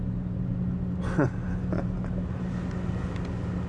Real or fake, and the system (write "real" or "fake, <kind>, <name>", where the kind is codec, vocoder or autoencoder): real